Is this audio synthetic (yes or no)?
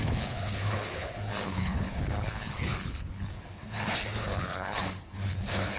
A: yes